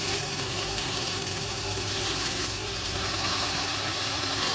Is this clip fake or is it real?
fake